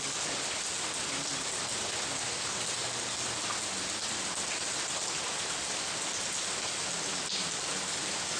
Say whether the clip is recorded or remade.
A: recorded